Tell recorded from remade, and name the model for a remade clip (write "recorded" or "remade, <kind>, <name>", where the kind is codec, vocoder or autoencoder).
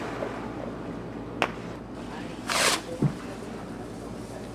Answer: recorded